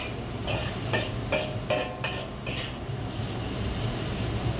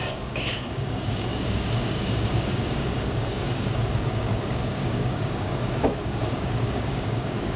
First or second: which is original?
first